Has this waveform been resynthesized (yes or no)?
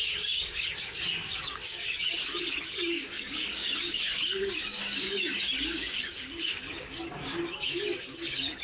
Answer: yes